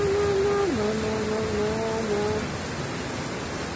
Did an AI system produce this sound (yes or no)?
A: no